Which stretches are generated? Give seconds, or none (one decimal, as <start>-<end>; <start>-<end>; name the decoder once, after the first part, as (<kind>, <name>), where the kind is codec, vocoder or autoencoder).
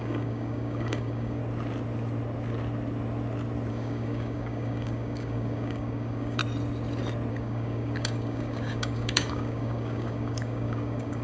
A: 0.0-1.4 (codec, DAC); 3.7-6.4; 7.3-11.2